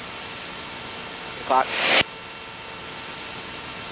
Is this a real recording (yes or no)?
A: yes